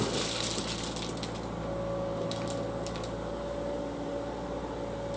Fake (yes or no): no